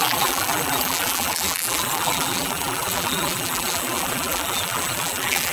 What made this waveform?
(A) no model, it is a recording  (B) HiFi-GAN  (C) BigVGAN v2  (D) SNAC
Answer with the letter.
C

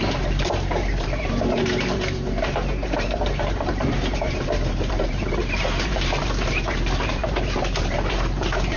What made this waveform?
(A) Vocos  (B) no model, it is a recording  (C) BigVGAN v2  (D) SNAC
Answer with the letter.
C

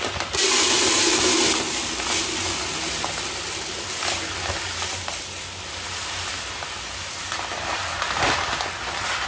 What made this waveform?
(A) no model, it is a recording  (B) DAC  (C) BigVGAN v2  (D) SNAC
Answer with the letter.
A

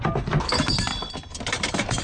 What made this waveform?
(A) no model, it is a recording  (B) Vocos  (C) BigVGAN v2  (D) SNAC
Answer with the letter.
A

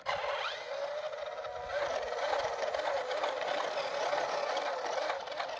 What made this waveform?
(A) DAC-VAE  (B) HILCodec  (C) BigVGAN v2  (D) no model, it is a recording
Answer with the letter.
D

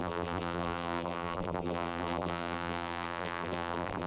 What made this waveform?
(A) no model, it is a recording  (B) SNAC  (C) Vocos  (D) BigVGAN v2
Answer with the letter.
D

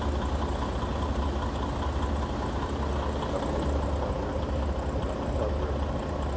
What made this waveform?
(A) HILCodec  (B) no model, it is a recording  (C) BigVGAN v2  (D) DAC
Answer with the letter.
B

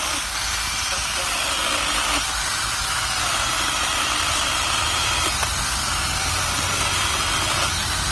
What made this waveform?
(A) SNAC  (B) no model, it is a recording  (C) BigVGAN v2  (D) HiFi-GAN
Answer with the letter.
C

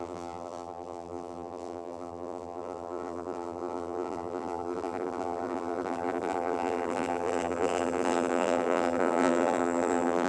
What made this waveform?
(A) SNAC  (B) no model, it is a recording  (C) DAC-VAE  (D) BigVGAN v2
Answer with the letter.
D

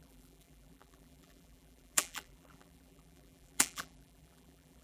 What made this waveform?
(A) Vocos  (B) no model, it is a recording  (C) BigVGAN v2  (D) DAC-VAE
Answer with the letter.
C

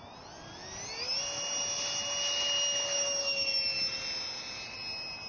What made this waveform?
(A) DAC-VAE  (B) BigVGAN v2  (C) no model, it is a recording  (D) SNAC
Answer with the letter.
C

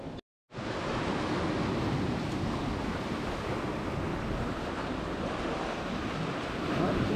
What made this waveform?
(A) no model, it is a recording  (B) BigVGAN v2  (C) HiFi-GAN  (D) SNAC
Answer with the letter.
A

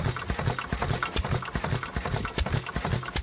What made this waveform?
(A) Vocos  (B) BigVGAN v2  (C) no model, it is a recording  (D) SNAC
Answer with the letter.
C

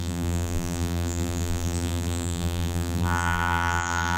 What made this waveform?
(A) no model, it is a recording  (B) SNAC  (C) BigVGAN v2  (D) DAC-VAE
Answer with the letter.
C